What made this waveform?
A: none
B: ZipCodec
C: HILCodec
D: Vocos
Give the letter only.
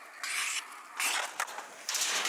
A